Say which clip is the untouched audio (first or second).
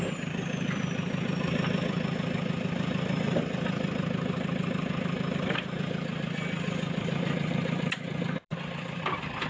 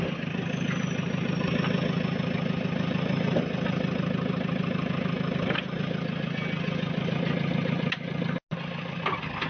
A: second